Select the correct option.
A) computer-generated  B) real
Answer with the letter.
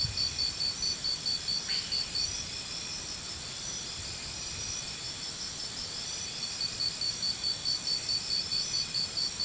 B